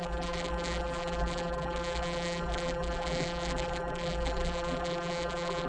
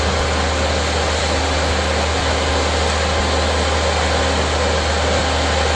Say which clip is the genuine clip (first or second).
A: second